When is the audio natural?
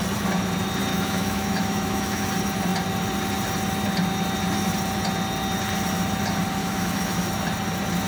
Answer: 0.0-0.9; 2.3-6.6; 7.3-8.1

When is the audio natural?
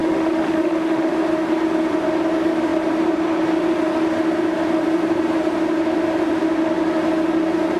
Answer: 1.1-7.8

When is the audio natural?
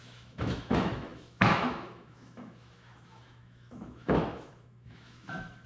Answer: none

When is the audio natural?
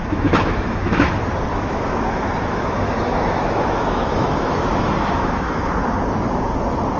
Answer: 1.1-1.5; 5.7-7.0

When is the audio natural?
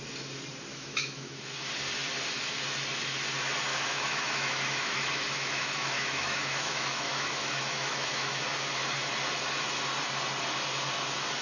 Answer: 0.0-0.7; 1.4-3.7; 8.4-11.4